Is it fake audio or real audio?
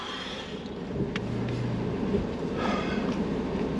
real